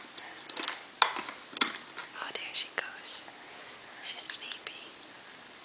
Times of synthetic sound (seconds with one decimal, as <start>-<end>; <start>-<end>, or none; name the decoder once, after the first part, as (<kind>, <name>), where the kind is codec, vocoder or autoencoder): none